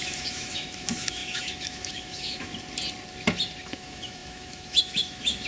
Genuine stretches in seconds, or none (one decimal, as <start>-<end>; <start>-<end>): 2.5-3.7